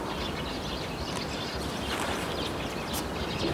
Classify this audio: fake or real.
real